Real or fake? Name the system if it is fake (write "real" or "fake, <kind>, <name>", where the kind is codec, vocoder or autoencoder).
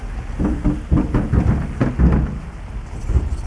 real